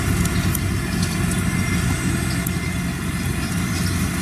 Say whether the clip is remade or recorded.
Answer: recorded